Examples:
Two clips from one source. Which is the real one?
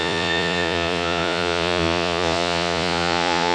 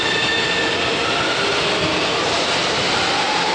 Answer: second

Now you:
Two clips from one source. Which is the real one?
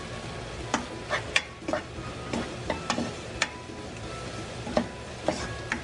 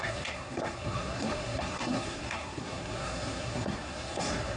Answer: first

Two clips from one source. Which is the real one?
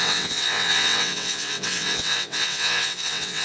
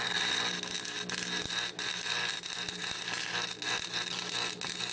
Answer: second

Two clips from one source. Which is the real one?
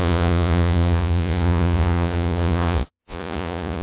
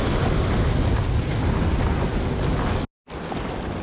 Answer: second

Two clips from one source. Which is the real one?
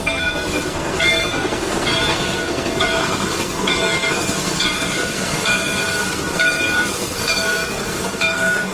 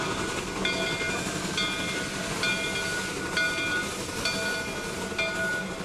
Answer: second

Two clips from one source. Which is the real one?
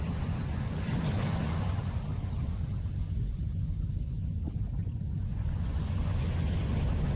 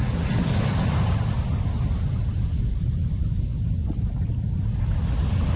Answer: second